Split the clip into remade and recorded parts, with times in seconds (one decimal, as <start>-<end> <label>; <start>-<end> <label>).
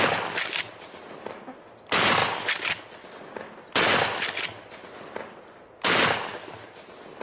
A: 0.0-7.2 recorded